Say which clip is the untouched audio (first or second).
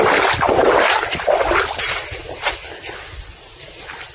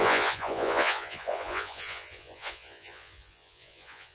first